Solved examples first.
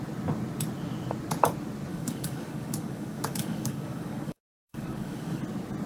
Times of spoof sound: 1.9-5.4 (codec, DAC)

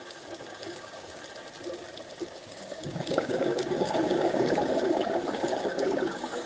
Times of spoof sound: 0.0-1.2 (codec, DAC); 2.2-6.5

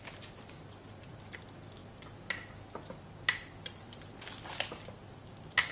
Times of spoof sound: none